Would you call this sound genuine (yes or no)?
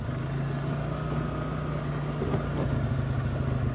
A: yes